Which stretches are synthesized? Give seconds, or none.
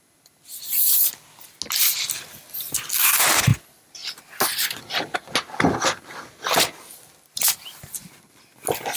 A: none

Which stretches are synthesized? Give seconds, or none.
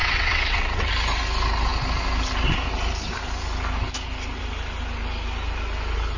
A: 0.0-0.9 (vocoder, WaveNeXt)